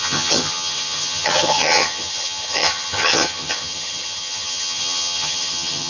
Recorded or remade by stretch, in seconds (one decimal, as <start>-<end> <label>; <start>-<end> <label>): 0.0-5.9 remade